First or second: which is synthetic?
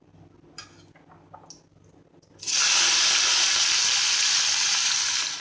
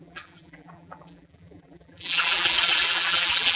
second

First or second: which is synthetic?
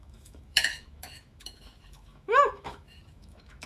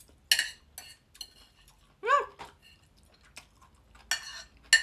first